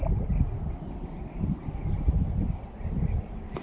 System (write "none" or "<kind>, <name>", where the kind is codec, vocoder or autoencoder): none